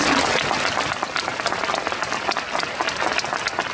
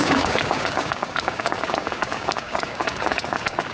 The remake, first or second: second